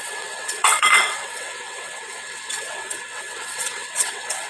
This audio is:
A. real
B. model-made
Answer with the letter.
B